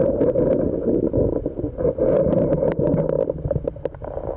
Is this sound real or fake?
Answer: real